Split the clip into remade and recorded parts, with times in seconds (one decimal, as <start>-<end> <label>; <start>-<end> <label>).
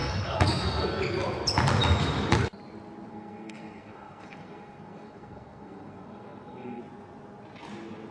0.0-1.0 remade; 1.0-3.1 recorded; 3.1-6.8 remade; 6.8-8.1 recorded